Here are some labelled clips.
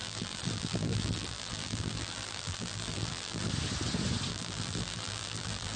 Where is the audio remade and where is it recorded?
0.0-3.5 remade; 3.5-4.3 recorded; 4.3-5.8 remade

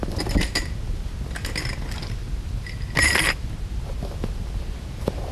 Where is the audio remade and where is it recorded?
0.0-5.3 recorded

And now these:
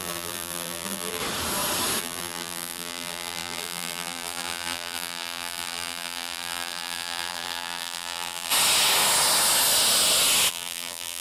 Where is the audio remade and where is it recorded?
0.0-1.2 remade; 1.2-2.0 recorded; 2.0-8.5 remade; 8.5-10.5 recorded; 10.5-11.2 remade

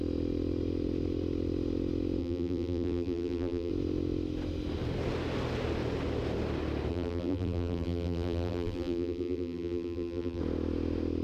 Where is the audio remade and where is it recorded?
0.0-2.2 recorded; 2.2-3.7 remade; 3.7-6.9 recorded; 6.9-10.4 remade; 10.4-11.2 recorded

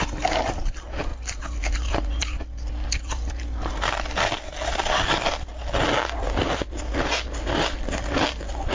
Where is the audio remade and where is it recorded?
0.0-0.5 recorded; 0.5-1.1 remade; 1.1-4.2 recorded; 4.2-5.5 remade; 5.5-7.6 recorded; 7.6-8.7 remade